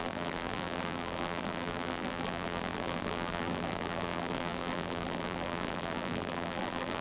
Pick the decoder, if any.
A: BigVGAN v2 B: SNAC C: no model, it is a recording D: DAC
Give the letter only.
A